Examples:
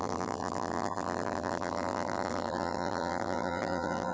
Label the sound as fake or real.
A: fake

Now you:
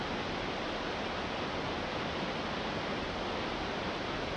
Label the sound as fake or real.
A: real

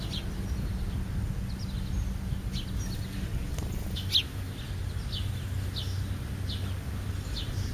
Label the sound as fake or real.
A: real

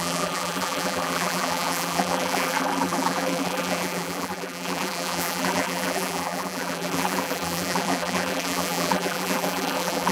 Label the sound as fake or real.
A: fake